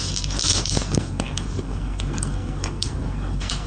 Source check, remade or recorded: remade